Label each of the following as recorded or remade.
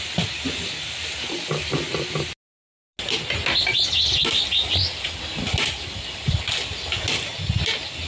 recorded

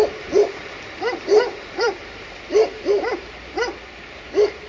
remade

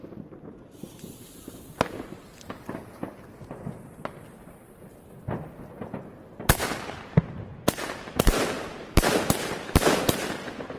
remade